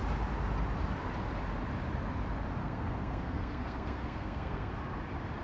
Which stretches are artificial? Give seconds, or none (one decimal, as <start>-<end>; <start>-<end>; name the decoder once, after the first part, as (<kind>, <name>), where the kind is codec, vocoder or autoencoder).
2.6-4.7 (codec, SNAC)